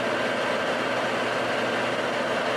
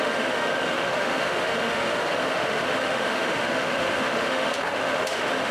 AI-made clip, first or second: second